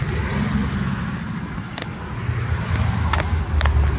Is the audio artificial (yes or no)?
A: no